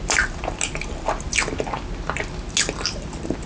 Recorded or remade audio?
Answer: recorded